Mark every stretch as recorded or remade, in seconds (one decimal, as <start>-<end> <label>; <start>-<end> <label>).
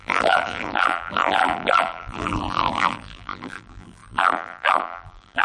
0.0-5.4 remade